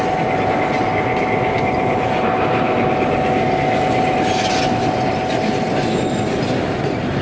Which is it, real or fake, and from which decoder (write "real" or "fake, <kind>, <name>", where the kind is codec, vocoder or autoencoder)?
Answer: real